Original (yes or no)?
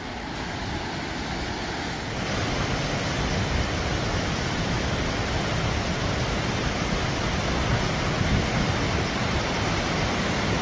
yes